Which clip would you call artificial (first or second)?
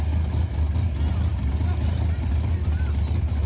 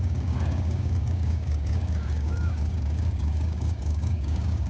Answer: second